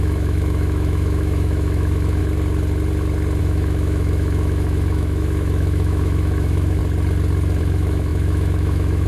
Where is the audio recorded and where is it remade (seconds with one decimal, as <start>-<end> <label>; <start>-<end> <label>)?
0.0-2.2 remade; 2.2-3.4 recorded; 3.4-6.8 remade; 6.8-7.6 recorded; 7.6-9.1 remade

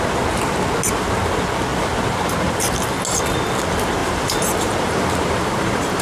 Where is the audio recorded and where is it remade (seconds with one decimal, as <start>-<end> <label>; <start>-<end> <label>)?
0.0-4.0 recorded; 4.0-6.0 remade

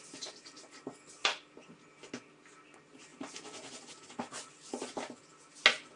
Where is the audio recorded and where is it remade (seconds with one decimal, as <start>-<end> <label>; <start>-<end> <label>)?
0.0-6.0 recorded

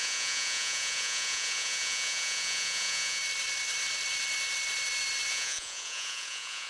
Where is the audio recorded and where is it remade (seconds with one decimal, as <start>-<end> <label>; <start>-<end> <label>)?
0.0-3.2 remade; 3.2-5.3 recorded; 5.3-6.7 remade